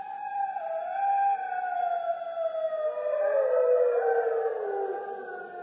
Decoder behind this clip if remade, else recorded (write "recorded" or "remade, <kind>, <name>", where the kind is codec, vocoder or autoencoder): recorded